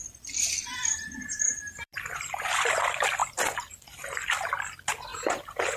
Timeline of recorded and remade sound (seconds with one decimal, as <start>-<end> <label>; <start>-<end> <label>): 0.0-1.2 recorded; 1.2-2.5 remade; 2.5-3.2 recorded; 3.2-3.7 remade; 3.7-5.1 recorded; 5.1-5.8 remade